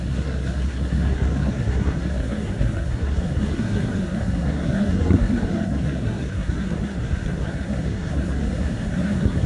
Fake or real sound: fake